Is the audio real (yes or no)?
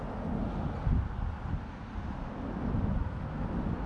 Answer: yes